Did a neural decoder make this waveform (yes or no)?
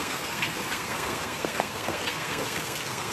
yes